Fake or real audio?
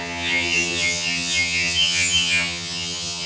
fake